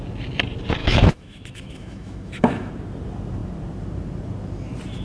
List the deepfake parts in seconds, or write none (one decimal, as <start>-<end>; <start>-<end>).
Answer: 0.8-2.7